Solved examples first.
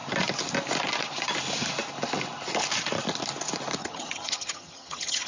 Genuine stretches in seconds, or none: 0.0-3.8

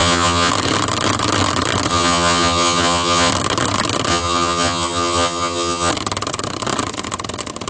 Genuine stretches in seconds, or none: 0.5-1.9; 3.3-4.1; 5.9-7.7

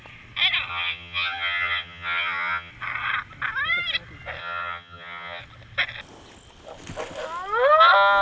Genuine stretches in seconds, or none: 0.0-0.7; 2.7-4.4; 5.4-8.2

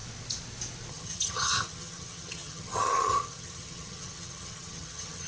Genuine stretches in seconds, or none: 0.0-0.9

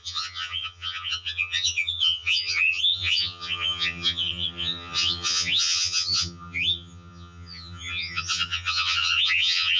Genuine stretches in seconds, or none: none

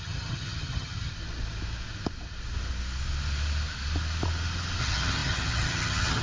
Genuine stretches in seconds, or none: 1.1-4.8

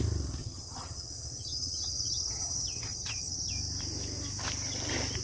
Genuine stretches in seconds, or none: 0.0-0.4; 3.5-5.2